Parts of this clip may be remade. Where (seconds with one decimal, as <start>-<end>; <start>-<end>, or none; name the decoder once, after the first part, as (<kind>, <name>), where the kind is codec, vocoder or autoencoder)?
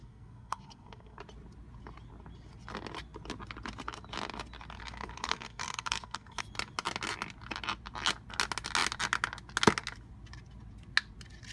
0.0-1.2 (codec, SNAC); 4.8-6.4